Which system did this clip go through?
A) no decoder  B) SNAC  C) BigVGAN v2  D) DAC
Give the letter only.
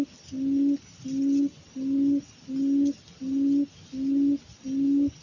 A